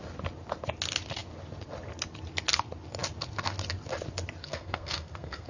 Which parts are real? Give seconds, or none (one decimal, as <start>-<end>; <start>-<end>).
0.0-4.4